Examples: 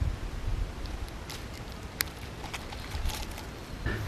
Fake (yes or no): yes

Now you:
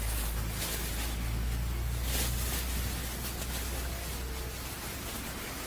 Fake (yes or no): no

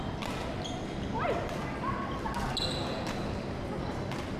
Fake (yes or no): no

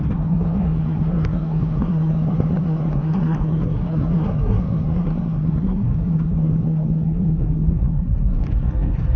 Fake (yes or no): yes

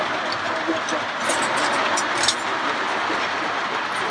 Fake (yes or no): no